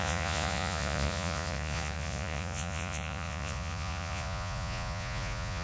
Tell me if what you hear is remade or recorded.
remade